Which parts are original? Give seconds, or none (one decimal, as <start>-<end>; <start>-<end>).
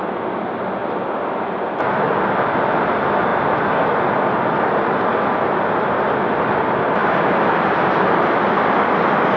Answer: 0.0-9.4